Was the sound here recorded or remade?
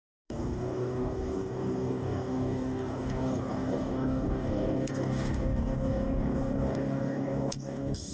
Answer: remade